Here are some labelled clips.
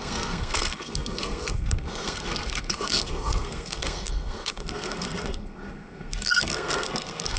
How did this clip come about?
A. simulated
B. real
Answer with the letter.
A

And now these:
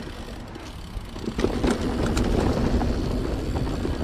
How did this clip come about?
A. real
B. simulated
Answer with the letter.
A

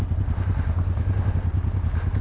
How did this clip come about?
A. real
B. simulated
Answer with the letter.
A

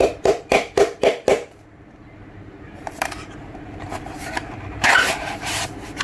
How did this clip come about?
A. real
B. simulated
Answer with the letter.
B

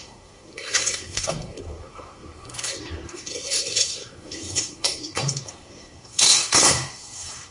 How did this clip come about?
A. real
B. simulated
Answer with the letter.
B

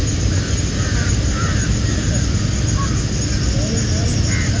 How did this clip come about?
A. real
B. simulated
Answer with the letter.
A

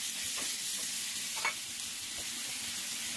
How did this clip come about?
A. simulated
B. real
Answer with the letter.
B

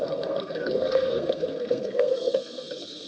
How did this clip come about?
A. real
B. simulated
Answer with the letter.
B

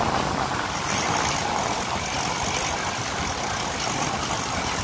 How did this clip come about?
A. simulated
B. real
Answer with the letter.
B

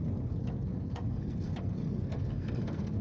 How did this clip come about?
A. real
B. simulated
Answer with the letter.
B